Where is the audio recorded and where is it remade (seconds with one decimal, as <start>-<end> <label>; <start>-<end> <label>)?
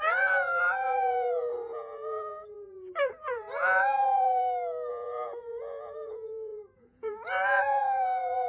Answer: 0.0-4.4 remade; 4.4-4.9 recorded; 4.9-8.5 remade